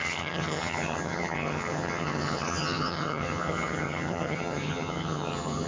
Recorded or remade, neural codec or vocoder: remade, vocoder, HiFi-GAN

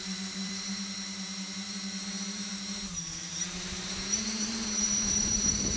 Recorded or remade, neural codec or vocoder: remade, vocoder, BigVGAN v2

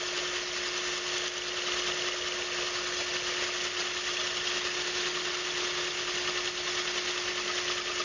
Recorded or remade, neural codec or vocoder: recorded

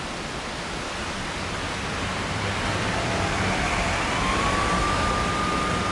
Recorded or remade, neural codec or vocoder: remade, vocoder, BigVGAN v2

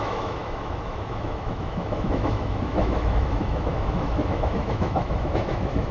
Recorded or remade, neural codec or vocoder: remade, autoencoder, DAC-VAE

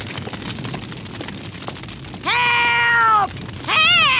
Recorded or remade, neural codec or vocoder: recorded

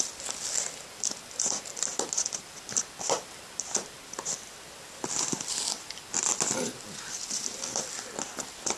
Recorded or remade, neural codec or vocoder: recorded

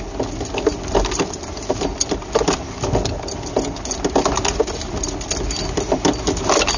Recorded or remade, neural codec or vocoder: recorded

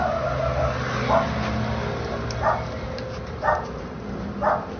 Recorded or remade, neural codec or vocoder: recorded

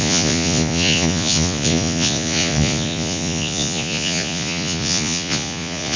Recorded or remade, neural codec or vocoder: remade, vocoder, Vocos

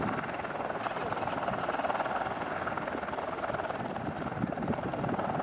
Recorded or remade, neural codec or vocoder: recorded